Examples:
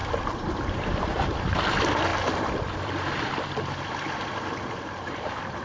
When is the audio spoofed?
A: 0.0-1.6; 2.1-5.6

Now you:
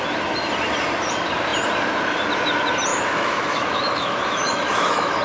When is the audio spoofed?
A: 2.9-5.2

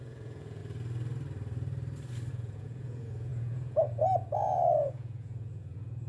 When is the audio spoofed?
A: 0.0-0.6; 2.3-6.1

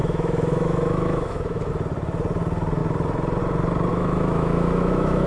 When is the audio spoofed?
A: 0.0-1.7; 3.9-5.3

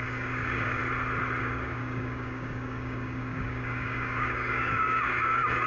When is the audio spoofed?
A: 0.0-0.8; 1.4-5.7